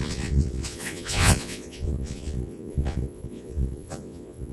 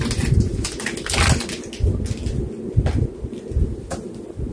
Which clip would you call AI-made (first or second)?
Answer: first